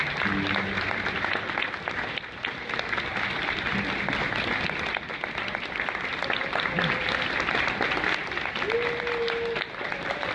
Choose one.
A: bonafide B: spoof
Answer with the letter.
A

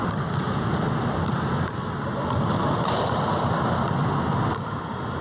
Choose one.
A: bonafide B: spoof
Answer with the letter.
A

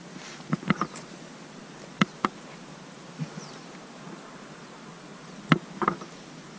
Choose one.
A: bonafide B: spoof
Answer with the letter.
A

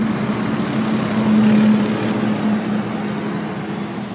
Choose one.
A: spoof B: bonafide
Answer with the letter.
B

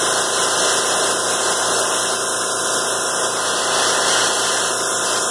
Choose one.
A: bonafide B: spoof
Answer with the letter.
A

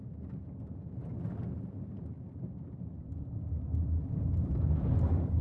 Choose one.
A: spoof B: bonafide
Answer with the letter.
B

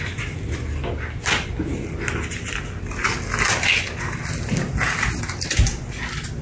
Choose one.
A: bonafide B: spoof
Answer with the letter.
A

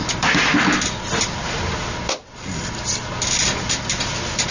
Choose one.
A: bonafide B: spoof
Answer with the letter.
A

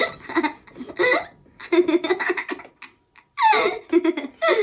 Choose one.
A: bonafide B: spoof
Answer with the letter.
A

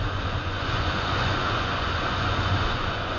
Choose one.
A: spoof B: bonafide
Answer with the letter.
A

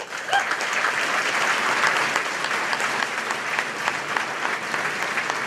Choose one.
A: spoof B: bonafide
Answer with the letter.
B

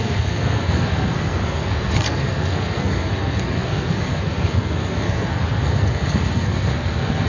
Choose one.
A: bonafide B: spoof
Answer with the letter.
B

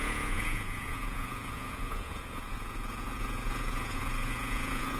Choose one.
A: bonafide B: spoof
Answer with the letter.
B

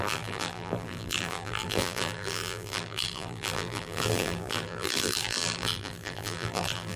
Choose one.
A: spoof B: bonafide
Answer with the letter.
A